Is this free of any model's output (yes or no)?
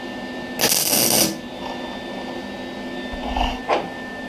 yes